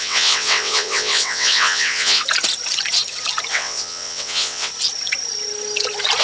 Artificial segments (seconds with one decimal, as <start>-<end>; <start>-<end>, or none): 0.0-2.2; 3.5-4.7